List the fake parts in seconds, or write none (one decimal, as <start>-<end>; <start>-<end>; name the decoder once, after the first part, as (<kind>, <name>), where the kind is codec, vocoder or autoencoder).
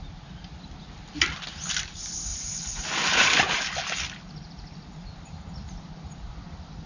2.3-3.6 (vocoder, BigVGAN v2)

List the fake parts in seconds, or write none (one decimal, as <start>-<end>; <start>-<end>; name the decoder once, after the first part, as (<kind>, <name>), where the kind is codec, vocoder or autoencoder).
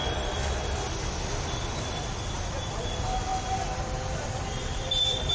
0.0-3.3 (vocoder, BigVGAN v2); 4.1-5.3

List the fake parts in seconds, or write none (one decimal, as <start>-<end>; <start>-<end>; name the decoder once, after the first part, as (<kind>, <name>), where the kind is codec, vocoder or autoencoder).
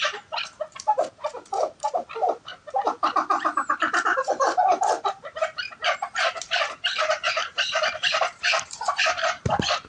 0.0-9.9 (vocoder, BigVGAN v2)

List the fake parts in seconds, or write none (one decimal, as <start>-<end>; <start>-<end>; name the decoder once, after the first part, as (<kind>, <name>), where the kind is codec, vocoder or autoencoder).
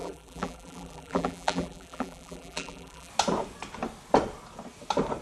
0.0-3.1 (vocoder, BigVGAN v2)